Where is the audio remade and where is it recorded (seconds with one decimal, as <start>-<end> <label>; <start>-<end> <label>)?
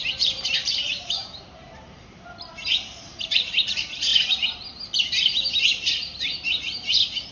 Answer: 0.0-7.3 remade